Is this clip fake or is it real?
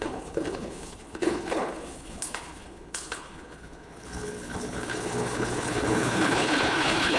fake